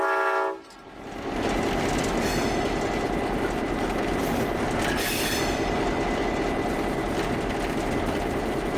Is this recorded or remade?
recorded